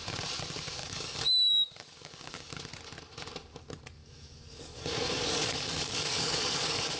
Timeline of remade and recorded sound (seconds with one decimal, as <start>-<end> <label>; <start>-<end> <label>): 0.0-0.8 recorded; 0.8-2.5 remade; 2.5-4.0 recorded; 4.0-7.0 remade